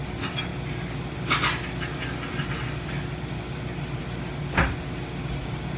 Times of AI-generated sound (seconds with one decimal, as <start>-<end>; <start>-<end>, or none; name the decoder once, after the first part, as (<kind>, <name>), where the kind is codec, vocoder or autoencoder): none